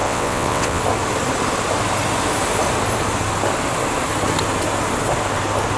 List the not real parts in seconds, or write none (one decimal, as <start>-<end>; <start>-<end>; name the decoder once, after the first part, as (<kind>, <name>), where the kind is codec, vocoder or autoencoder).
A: 0.0-0.8 (vocoder, WaveNeXt)